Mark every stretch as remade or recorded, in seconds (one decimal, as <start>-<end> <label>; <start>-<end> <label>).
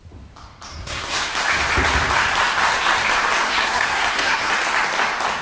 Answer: 0.0-0.7 recorded; 0.7-1.3 remade; 1.3-3.5 recorded; 3.5-4.5 remade; 4.5-5.4 recorded